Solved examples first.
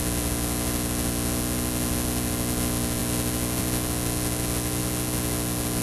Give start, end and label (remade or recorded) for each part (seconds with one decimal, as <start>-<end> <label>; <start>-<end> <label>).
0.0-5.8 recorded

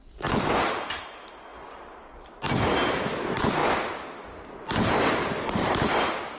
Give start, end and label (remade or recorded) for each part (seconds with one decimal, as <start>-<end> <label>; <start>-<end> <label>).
0.0-6.4 recorded

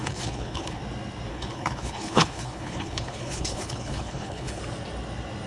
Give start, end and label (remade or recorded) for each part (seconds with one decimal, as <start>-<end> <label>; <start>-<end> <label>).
0.0-0.8 remade; 0.8-1.3 recorded; 1.3-4.6 remade; 4.6-5.5 recorded

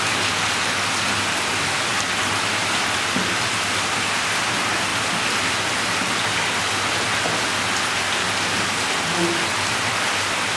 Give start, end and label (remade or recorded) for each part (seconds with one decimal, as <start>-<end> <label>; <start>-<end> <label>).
0.0-10.6 recorded

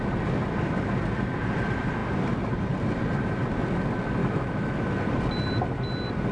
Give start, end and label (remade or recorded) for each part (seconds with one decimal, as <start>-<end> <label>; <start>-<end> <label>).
0.0-4.2 recorded; 4.2-4.9 remade; 4.9-6.3 recorded